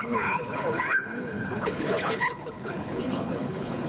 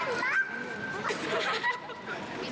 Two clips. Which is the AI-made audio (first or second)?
first